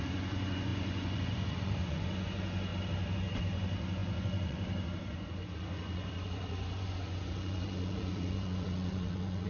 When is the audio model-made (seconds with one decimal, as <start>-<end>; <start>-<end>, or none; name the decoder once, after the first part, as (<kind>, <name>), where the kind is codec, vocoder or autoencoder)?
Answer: 0.0-2.7 (vocoder, Vocos); 3.4-9.5